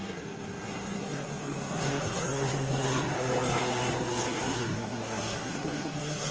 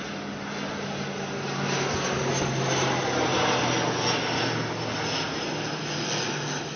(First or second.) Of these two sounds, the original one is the second